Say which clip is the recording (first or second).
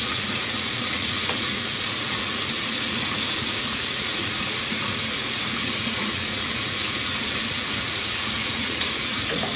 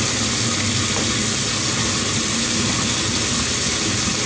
second